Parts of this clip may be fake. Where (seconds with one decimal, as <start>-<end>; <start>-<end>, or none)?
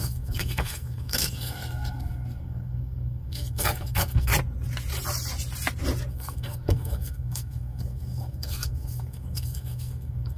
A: 0.0-4.3; 6.1-10.4